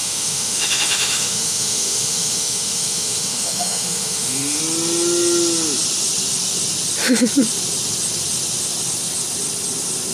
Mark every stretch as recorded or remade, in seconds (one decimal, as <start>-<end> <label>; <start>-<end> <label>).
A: 0.0-4.6 remade; 4.6-10.1 recorded